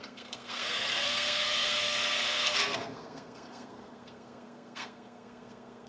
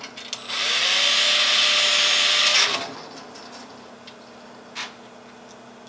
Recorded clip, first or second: second